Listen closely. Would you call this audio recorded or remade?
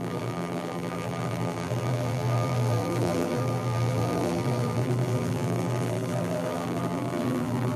remade